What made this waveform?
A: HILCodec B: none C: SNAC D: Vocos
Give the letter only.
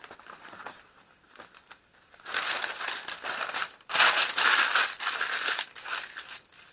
B